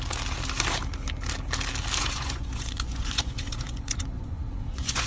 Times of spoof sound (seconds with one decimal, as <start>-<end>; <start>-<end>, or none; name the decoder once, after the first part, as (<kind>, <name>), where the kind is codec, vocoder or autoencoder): 2.0-5.1 (vocoder, Vocos)